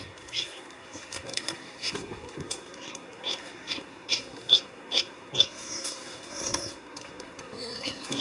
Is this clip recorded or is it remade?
remade